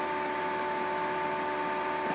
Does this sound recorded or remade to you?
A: recorded